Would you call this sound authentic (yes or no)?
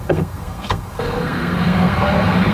no